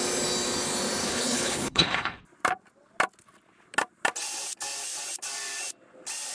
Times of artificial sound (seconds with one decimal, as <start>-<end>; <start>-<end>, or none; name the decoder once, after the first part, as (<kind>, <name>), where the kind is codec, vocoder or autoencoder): 1.0-2.2 (codec, HILCodec)